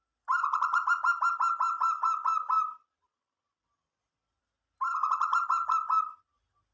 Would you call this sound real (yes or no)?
yes